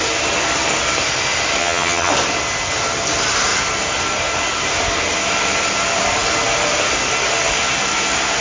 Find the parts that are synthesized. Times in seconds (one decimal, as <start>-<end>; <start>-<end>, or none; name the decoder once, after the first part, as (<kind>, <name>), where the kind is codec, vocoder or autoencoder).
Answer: 1.6-2.1 (vocoder, HiFi-GAN)